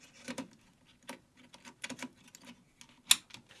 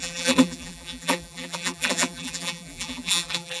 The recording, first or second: first